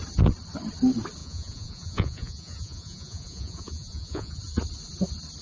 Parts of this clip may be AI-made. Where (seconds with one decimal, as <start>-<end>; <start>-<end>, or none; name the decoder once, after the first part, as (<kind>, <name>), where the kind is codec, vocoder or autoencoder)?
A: 1.2-4.4 (vocoder, Vocos)